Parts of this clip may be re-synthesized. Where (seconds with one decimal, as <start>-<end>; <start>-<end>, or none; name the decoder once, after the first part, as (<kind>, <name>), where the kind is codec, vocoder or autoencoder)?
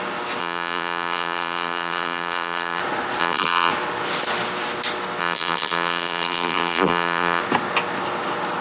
0.4-2.8 (vocoder, BigVGAN v2); 3.2-3.7; 5.2-7.4